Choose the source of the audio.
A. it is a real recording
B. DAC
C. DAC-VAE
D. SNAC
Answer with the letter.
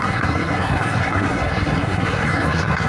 D